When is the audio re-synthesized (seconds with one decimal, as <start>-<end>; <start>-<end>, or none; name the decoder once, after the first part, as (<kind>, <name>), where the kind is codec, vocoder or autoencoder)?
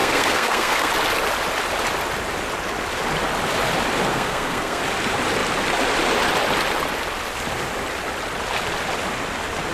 0.0-0.9 (codec, SNAC); 4.1-4.8